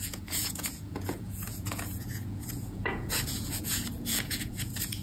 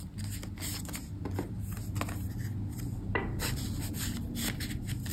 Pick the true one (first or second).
second